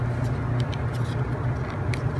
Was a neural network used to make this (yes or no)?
no